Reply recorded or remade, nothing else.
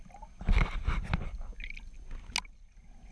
recorded